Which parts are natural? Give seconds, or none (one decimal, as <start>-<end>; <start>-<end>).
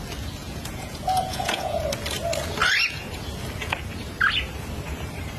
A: 0.0-0.4; 1.8-5.4